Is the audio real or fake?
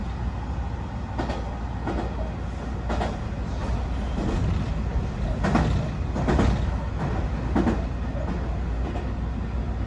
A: real